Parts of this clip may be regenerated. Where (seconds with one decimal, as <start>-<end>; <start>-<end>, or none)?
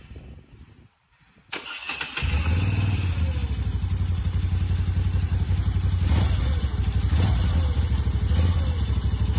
none